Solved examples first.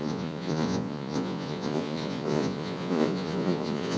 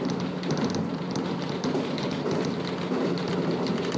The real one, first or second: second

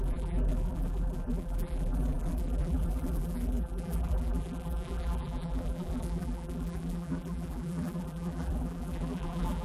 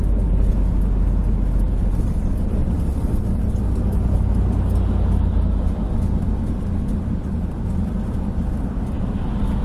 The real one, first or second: second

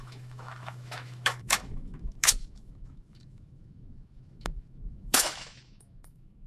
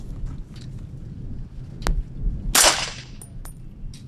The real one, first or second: second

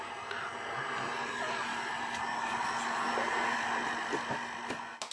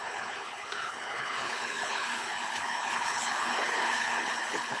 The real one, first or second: first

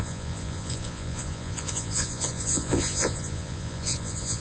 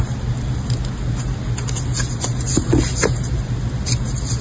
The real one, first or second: second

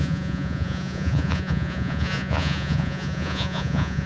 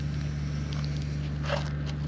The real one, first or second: second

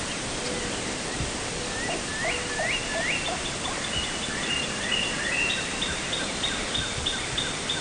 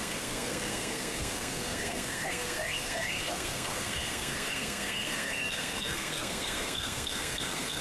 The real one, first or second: first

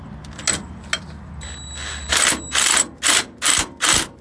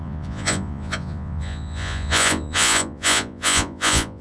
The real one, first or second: first